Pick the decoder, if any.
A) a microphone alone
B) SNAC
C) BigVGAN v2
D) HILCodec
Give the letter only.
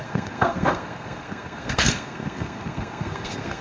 B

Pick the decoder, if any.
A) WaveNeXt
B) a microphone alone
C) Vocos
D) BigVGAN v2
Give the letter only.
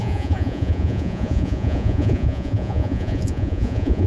C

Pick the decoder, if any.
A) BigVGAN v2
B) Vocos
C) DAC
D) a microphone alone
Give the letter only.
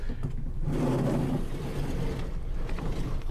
D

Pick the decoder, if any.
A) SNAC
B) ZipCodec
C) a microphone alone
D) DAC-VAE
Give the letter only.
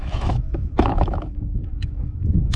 D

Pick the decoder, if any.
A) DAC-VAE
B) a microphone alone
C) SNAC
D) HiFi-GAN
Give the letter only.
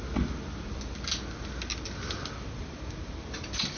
B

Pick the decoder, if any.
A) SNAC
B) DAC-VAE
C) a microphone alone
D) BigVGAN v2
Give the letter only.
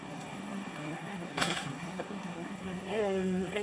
A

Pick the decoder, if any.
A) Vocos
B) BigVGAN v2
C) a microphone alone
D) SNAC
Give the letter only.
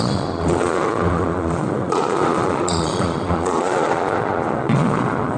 A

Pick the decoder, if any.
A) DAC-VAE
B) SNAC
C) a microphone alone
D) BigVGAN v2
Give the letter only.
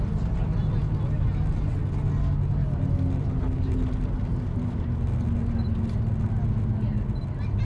C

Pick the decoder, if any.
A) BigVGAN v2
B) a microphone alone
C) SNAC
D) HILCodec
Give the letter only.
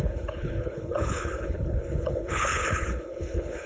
D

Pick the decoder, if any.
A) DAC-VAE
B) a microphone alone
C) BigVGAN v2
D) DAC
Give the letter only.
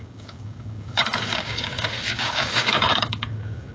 D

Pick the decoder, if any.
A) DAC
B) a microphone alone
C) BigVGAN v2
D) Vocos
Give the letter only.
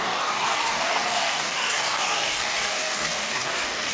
A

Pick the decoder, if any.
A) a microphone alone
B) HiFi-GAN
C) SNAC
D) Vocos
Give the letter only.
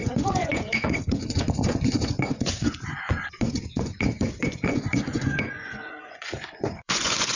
D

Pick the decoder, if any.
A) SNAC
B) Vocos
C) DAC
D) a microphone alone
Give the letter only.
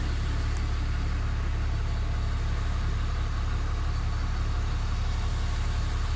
D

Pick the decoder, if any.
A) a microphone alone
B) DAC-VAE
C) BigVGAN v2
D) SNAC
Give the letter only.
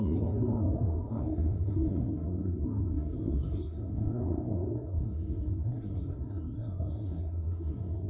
D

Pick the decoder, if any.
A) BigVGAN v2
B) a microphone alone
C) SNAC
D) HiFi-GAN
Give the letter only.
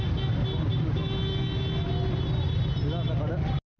B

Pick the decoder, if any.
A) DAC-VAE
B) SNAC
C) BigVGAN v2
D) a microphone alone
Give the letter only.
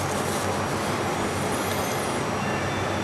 D